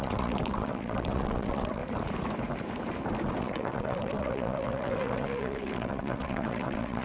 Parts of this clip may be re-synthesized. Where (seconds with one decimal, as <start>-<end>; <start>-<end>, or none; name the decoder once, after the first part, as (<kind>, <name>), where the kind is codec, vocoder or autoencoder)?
0.0-1.8 (vocoder, WaveNeXt); 3.4-7.0